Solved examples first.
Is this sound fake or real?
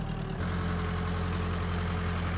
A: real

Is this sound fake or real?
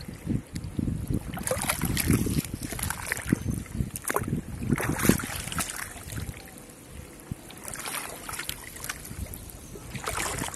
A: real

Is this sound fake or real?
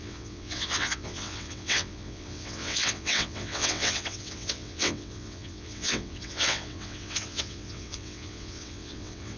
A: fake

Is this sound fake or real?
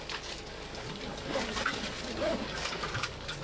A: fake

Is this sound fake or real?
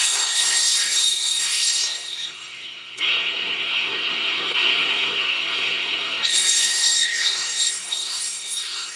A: fake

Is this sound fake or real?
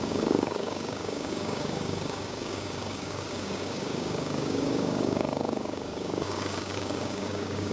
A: fake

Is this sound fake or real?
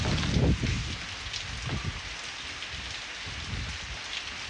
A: real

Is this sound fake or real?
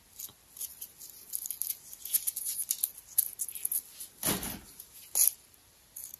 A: real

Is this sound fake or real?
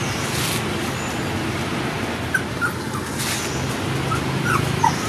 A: real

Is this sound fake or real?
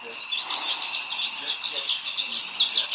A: real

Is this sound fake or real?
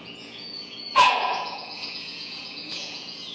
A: fake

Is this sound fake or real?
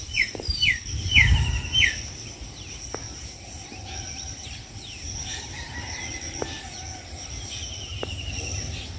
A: fake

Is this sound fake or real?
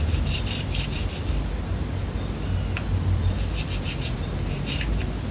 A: fake